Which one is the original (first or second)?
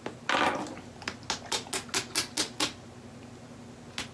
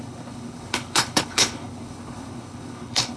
first